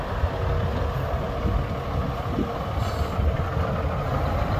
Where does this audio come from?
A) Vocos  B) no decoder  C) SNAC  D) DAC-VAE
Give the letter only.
B